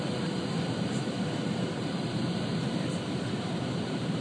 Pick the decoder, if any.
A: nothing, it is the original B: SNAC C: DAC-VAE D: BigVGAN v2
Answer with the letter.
D